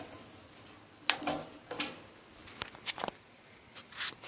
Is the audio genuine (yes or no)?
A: yes